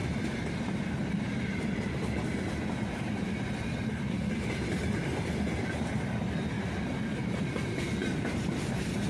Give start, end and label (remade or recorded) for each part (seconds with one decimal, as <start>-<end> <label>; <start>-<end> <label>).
0.0-9.1 recorded